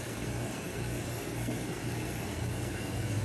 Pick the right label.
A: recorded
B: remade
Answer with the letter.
B